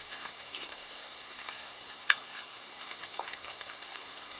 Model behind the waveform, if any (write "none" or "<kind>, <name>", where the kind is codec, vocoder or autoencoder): codec, SNAC